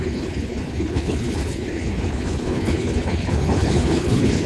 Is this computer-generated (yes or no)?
yes